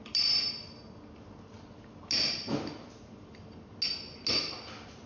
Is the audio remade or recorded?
recorded